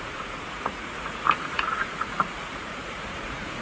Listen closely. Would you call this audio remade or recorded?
remade